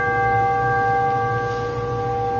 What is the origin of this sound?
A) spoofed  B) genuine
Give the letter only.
B